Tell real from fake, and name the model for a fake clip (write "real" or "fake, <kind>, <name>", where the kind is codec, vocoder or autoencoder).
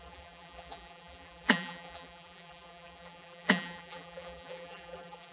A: fake, vocoder, BigVGAN v2